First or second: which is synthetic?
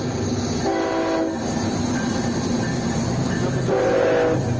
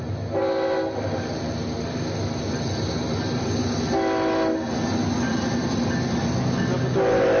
first